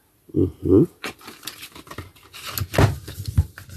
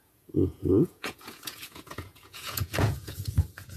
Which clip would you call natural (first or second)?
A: first